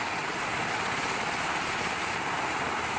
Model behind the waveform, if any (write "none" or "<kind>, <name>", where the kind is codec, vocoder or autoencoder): none